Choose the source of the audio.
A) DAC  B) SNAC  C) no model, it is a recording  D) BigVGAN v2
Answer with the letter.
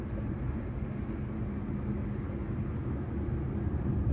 C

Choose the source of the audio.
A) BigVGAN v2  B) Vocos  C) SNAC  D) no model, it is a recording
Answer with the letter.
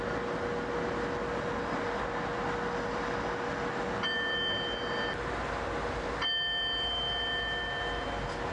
D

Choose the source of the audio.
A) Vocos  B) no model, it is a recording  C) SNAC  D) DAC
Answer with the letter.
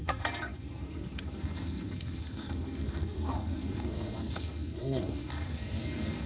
C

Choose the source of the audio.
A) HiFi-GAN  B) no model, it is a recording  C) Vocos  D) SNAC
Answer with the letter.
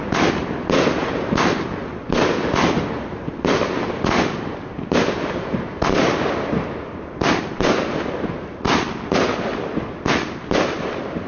B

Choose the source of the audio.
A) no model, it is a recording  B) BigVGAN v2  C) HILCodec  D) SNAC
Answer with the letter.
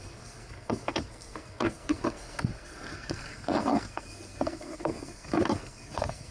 D